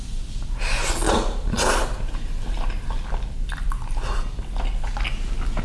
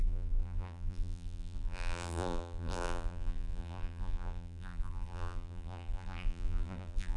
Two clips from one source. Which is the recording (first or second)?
first